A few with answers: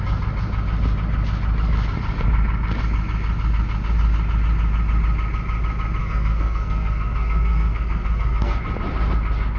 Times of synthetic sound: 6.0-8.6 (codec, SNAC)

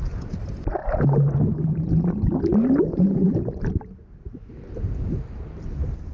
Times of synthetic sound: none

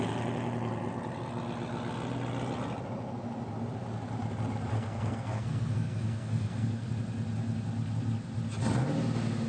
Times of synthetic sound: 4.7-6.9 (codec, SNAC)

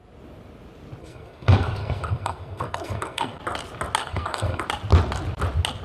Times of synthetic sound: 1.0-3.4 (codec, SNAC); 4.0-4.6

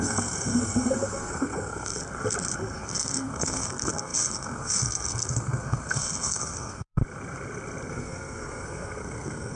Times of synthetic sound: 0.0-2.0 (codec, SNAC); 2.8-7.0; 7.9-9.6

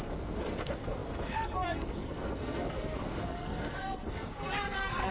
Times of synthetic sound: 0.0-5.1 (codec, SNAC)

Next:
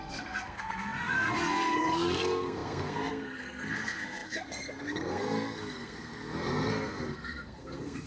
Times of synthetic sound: 0.0-8.1 (codec, SNAC)

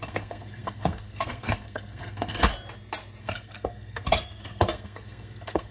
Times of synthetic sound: 0.0-2.5 (codec, SNAC); 3.2-5.7